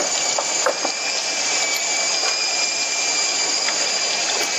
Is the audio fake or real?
real